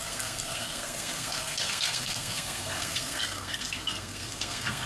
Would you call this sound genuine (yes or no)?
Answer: no